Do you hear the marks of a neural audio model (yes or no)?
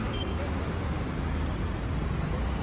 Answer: no